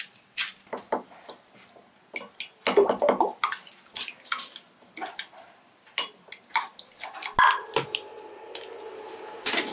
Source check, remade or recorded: recorded